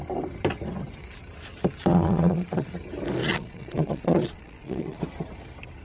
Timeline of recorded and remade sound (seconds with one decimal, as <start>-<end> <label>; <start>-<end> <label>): 0.0-1.9 recorded; 1.9-2.7 remade; 2.7-3.2 recorded; 3.2-5.0 remade; 5.0-5.8 recorded